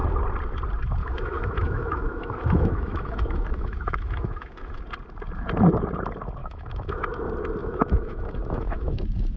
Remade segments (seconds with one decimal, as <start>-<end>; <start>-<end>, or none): 1.0-4.8; 6.4-7.0; 7.6-9.4